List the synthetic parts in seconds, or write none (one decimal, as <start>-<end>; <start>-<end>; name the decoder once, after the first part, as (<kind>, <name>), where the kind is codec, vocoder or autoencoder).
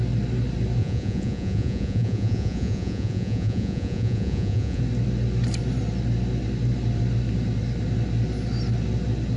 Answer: 0.8-4.8 (vocoder, Vocos)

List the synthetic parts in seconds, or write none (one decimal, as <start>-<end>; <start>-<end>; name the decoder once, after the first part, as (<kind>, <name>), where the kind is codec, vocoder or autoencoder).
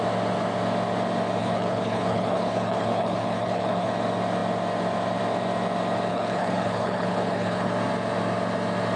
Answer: 1.4-3.9 (codec, HILCodec); 6.1-7.7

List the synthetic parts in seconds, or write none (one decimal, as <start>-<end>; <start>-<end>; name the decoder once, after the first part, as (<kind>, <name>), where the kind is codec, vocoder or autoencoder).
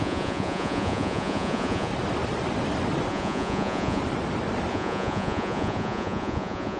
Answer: 0.0-1.9 (vocoder, Vocos); 3.1-4.0; 4.7-6.8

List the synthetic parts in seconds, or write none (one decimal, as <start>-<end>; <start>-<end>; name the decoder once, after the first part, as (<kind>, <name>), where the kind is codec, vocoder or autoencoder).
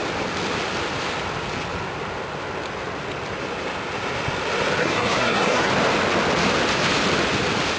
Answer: 4.8-5.7 (codec, SNAC)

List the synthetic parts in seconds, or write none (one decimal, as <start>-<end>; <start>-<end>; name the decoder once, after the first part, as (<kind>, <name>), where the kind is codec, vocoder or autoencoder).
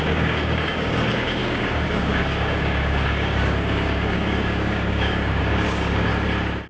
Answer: 0.0-6.1 (codec, DAC)